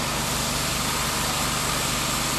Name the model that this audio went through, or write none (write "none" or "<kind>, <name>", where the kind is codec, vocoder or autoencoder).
none